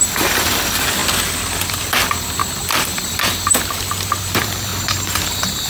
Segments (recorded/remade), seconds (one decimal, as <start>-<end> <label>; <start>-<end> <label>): 0.0-1.0 remade; 1.0-1.6 recorded; 1.6-2.4 remade; 2.4-3.0 recorded; 3.0-4.7 remade; 4.7-5.3 recorded; 5.3-5.7 remade